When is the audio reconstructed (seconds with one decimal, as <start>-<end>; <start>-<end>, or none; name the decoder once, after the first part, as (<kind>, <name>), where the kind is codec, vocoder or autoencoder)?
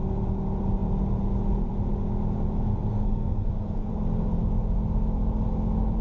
2.9-3.9 (codec, SNAC)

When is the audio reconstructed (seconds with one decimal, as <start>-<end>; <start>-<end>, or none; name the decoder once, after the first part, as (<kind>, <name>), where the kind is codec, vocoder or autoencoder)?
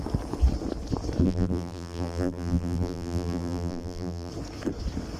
1.2-4.3 (vocoder, BigVGAN v2)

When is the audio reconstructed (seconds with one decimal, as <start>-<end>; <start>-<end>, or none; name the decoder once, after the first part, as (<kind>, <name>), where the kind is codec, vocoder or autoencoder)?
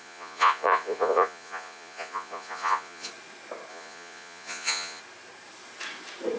0.0-3.1 (vocoder, Vocos); 3.7-5.0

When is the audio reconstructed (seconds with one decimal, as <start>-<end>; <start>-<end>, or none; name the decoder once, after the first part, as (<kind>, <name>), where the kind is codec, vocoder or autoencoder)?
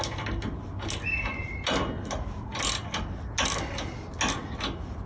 none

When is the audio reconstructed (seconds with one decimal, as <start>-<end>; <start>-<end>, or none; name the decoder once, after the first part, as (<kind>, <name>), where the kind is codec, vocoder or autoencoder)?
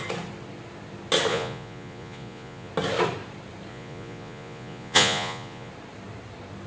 1.3-2.7 (vocoder, Vocos); 3.7-5.7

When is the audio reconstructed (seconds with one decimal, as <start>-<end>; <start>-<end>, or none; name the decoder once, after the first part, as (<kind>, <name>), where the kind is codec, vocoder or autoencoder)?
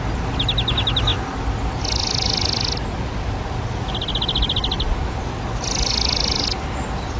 none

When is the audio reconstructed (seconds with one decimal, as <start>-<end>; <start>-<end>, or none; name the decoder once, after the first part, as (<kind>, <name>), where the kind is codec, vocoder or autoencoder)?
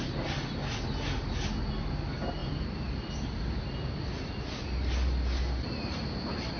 none